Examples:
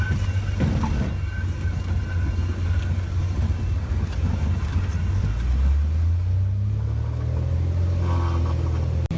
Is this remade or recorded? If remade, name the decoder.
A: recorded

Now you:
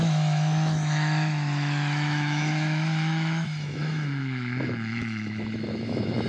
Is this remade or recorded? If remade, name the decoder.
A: remade, autoencoder, DAC-VAE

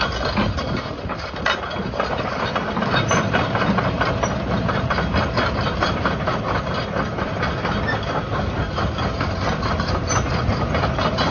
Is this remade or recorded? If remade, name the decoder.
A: recorded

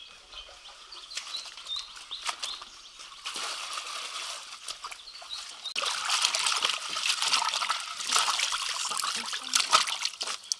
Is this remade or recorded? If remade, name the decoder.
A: recorded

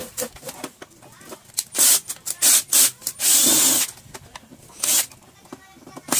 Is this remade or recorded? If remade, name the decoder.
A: recorded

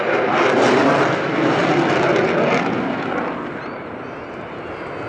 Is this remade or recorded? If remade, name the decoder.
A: recorded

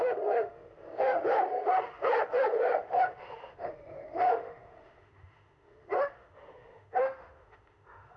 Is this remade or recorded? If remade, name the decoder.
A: remade, autoencoder, DAC-VAE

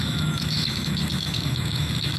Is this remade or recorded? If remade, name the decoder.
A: remade, autoencoder, DAC-VAE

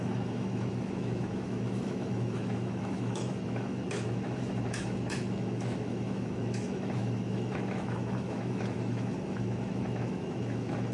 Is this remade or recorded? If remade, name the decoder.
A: remade, autoencoder, DAC-VAE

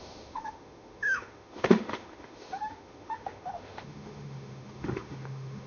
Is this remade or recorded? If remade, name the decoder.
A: remade, autoencoder, DAC-VAE